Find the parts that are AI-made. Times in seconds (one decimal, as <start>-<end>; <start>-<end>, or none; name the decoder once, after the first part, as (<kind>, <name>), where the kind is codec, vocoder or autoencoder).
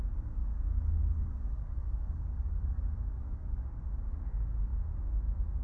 0.4-3.8 (codec, DAC)